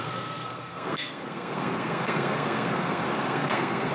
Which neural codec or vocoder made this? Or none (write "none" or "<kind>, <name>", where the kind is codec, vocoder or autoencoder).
codec, SNAC